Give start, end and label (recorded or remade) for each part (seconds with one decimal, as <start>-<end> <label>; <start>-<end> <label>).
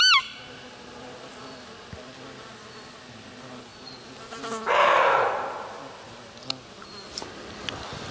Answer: 0.0-8.1 recorded